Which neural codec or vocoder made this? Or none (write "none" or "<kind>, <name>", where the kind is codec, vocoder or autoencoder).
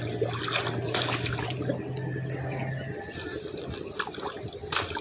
none